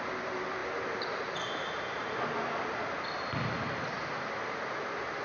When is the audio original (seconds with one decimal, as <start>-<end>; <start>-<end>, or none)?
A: 0.0-5.2